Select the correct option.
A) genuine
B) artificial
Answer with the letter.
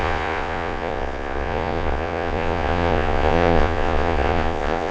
B